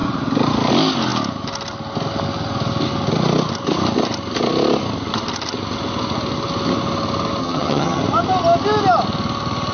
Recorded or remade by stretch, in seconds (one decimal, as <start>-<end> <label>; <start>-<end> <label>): 0.0-7.4 recorded; 7.4-8.0 remade; 8.0-9.7 recorded